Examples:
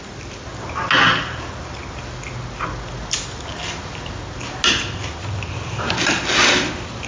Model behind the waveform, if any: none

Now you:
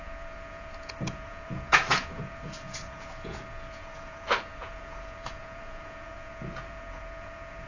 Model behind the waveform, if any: vocoder, Vocos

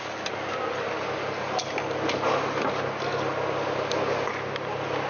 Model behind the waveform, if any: none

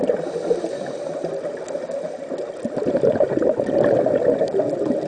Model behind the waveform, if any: none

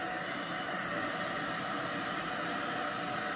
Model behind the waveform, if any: none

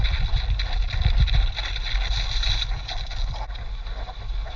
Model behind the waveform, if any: none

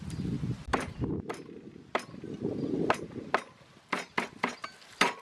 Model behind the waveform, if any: none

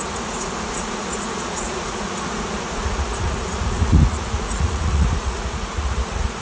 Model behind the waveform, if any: vocoder, Vocos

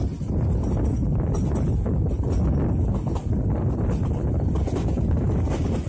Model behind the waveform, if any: none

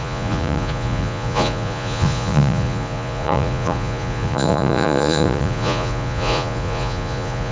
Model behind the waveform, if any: vocoder, Vocos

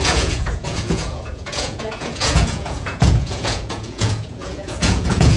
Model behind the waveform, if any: vocoder, Vocos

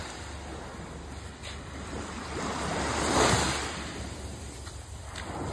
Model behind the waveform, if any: none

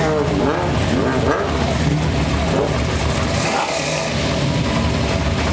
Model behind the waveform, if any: none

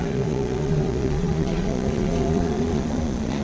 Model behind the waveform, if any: vocoder, Vocos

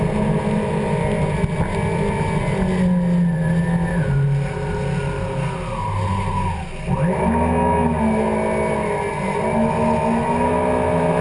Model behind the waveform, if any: none